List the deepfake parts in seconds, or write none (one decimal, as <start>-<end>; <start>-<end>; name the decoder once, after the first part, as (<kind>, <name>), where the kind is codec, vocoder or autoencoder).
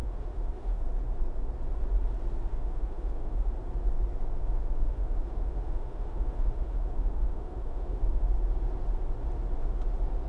0.0-0.8 (autoencoder, DAC-VAE); 2.5-3.5; 4.4-8.3